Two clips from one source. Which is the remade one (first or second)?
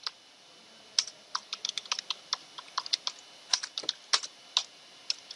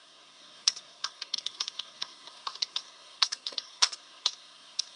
second